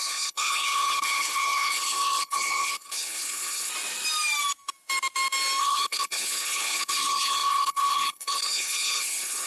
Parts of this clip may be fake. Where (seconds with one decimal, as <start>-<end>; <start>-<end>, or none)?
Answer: 0.0-3.7; 5.6-9.5